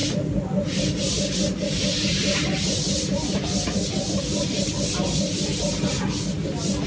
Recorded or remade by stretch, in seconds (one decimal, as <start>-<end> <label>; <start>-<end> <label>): 0.0-6.9 recorded